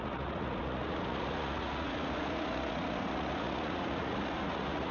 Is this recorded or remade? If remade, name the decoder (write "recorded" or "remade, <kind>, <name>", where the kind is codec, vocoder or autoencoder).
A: remade, vocoder, Vocos